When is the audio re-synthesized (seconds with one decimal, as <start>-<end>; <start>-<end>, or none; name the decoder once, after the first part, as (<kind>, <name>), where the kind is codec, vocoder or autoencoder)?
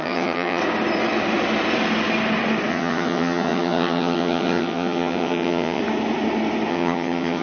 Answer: 0.0-0.6 (vocoder, HiFi-GAN); 2.7-5.8; 6.7-7.4